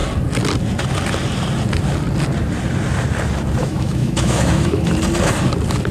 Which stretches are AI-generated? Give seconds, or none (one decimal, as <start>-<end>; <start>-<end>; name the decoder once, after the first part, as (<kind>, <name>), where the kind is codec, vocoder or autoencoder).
3.6-4.9 (autoencoder, DAC-VAE)